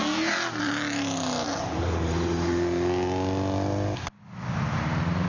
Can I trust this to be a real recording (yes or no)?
yes